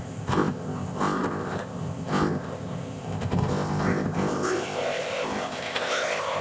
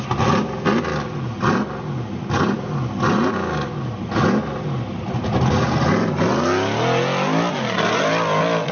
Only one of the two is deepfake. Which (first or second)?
first